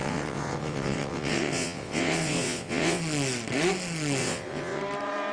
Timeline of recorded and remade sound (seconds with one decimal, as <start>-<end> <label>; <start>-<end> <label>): 0.0-3.0 remade; 3.0-4.2 recorded; 4.2-4.8 remade; 4.8-5.3 recorded